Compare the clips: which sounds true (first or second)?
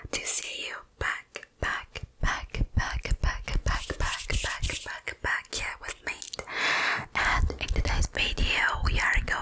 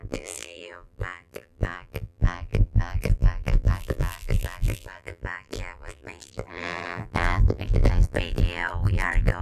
first